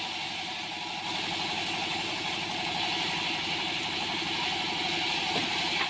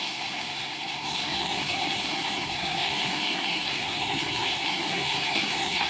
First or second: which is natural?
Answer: first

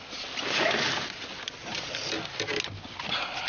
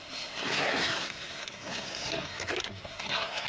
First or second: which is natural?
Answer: first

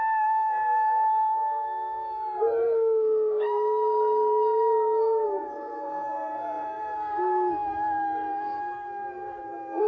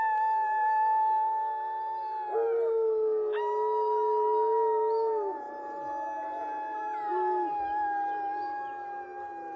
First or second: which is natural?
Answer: second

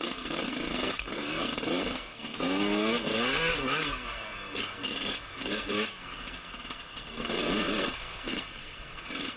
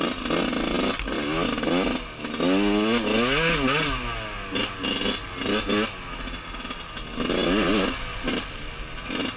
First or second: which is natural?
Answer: second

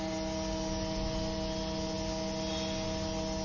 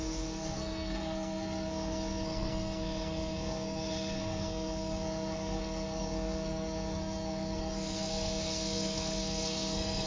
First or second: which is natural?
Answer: first